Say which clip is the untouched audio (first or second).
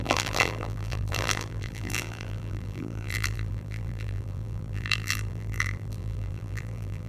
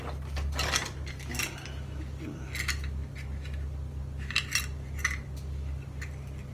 second